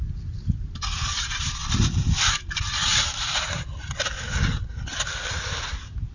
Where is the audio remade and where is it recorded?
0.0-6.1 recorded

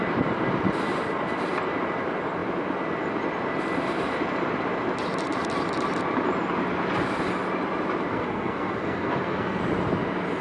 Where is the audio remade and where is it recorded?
0.0-8.1 recorded; 8.1-9.6 remade; 9.6-10.4 recorded

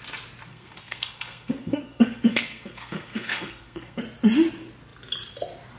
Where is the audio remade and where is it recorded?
0.0-0.5 recorded; 0.5-4.0 remade; 4.0-5.8 recorded

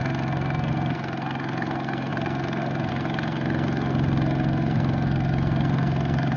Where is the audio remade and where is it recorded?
0.0-6.4 remade

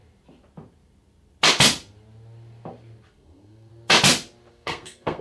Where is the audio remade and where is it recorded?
0.0-3.1 recorded; 3.1-3.7 remade; 3.7-4.5 recorded; 4.5-5.2 remade

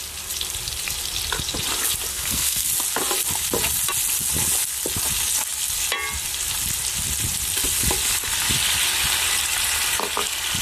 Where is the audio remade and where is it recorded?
0.0-2.1 recorded; 2.1-2.7 remade; 2.7-10.6 recorded

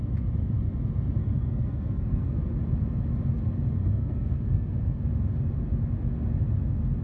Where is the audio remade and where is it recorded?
0.0-1.2 recorded; 1.2-2.4 remade; 2.4-3.8 recorded; 3.8-5.0 remade; 5.0-7.0 recorded

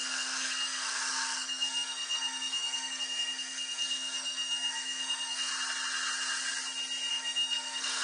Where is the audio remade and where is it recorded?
0.0-5.5 remade; 5.5-7.1 recorded; 7.1-8.0 remade